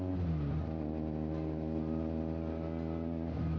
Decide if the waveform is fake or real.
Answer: real